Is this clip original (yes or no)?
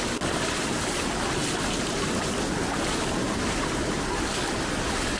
yes